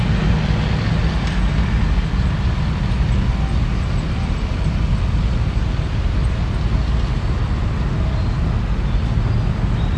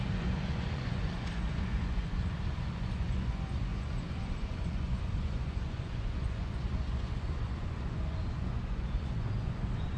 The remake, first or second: second